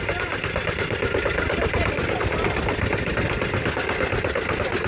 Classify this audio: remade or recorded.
recorded